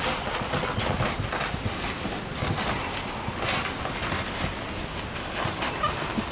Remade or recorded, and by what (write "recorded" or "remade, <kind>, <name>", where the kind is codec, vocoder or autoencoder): recorded